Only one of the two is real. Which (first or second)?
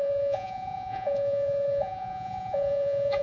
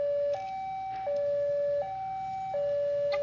second